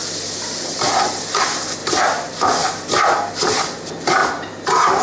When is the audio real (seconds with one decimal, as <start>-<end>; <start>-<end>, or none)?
0.0-1.8; 3.3-4.2